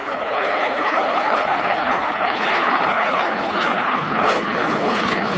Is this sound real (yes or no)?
no